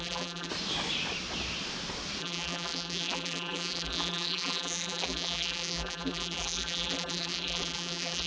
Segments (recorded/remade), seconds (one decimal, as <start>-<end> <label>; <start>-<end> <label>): 0.0-0.5 remade; 0.5-2.2 recorded; 2.2-8.3 remade